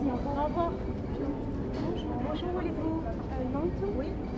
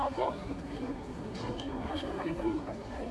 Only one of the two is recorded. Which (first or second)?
first